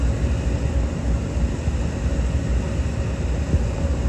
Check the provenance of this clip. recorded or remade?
recorded